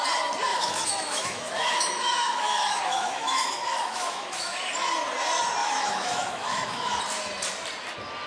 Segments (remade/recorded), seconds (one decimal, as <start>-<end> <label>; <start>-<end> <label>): 0.0-0.5 recorded; 0.5-4.7 remade; 4.7-5.6 recorded; 5.6-7.0 remade; 7.0-8.3 recorded